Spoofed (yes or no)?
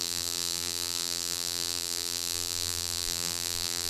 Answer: yes